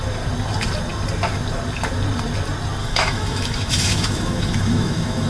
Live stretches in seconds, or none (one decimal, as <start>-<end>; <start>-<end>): 0.0-2.8